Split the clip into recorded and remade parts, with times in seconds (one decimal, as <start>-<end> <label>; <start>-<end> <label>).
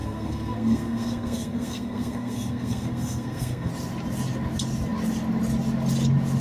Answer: 0.0-3.7 remade; 3.7-6.4 recorded